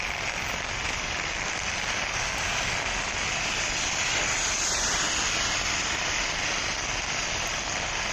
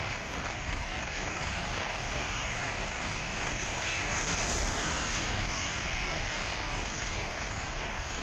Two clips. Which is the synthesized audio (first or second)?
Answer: second